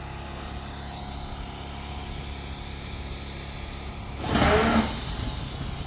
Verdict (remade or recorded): recorded